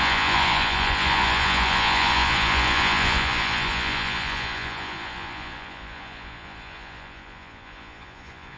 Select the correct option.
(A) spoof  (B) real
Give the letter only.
A